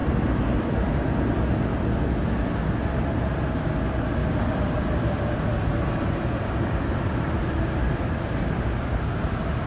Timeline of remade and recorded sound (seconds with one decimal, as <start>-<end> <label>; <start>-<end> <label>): 0.0-4.2 recorded; 4.2-8.6 remade; 8.6-9.7 recorded